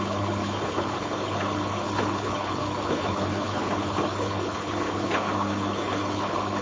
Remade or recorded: remade